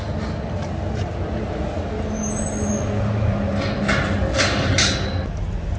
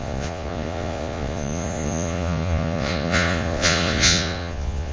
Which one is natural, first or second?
first